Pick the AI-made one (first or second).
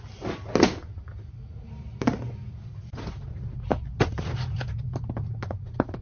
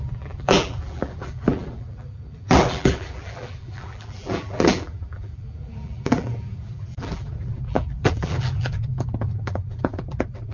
second